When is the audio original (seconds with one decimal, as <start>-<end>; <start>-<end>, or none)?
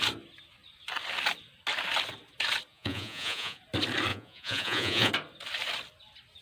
0.0-2.7; 3.6-4.1; 5.1-6.4